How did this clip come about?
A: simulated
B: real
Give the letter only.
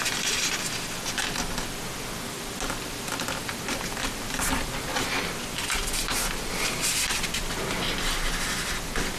B